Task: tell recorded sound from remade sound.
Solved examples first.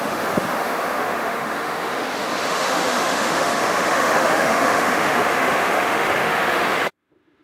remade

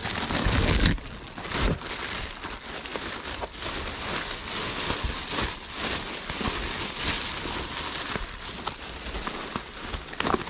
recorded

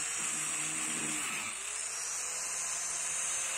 recorded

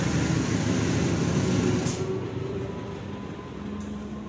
recorded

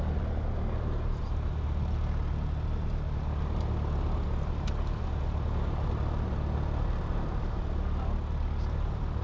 recorded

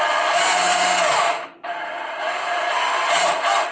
remade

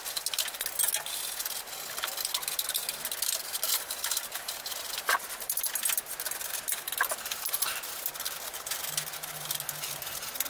recorded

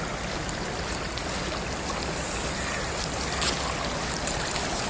recorded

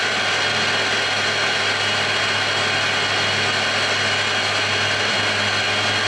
recorded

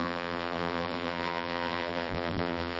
remade